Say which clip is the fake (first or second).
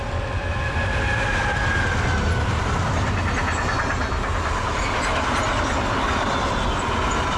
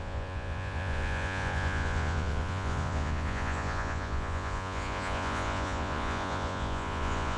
second